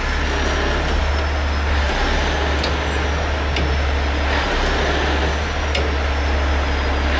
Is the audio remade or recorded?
recorded